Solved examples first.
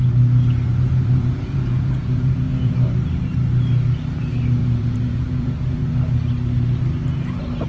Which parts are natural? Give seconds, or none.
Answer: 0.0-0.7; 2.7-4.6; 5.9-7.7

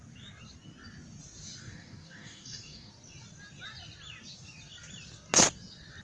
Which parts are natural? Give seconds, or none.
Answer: 0.0-1.6; 2.9-6.0